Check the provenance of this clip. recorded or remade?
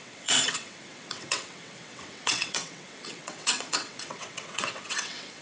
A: remade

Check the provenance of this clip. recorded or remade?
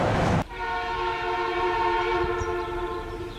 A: remade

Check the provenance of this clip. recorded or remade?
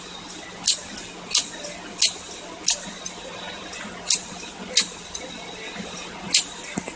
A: recorded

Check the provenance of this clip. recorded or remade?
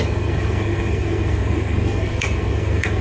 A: remade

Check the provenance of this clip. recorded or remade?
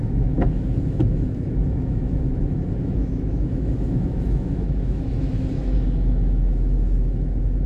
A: remade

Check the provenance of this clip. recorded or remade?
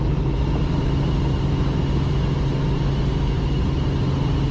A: recorded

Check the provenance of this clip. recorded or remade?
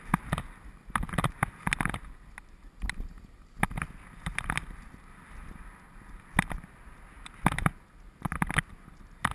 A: recorded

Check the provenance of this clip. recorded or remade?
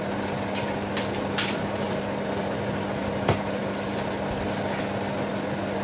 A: recorded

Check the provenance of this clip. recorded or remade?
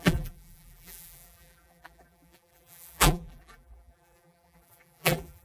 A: remade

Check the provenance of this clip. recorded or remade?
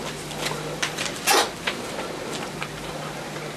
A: recorded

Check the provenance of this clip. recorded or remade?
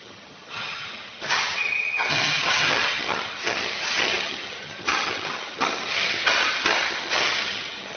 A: remade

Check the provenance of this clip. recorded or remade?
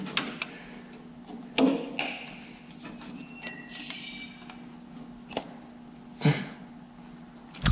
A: recorded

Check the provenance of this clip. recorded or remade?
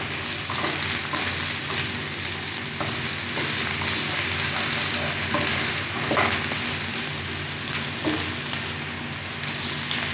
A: recorded